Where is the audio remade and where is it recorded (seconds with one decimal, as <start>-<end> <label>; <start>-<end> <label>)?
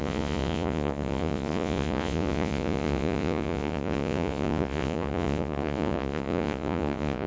0.0-7.3 remade